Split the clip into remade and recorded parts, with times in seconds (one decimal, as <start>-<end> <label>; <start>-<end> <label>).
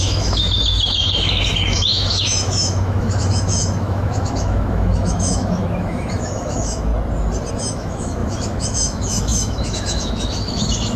0.0-6.9 remade; 6.9-7.5 recorded; 7.5-11.0 remade